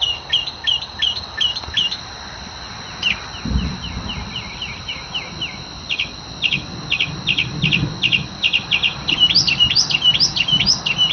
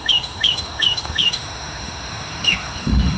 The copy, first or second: second